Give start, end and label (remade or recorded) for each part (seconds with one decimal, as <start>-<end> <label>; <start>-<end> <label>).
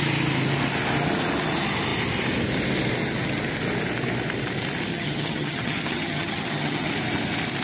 0.0-4.9 recorded; 4.9-6.9 remade; 6.9-7.6 recorded